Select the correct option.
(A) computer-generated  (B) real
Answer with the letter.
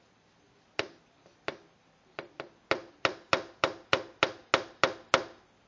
B